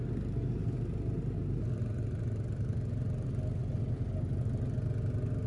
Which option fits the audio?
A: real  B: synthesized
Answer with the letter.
A